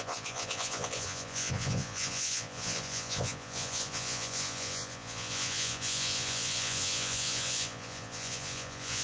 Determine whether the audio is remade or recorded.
remade